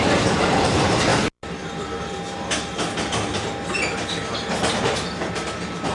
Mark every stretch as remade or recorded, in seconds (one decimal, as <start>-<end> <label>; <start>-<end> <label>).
0.0-1.1 remade; 1.1-4.6 recorded; 4.6-5.9 remade